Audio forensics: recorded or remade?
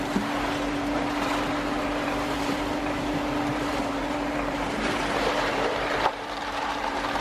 remade